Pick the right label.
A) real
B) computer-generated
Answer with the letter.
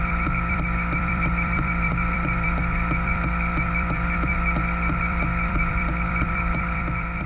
B